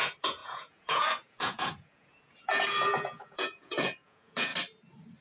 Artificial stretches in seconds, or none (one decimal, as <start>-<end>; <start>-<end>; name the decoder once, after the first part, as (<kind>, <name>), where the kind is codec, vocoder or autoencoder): 0.0-4.5 (vocoder, Vocos)